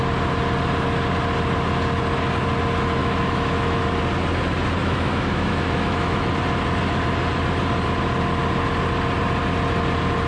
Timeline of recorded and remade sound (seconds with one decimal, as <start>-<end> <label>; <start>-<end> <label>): 0.0-3.0 recorded; 3.0-3.8 remade; 3.8-4.8 recorded; 4.8-6.3 remade; 6.3-10.3 recorded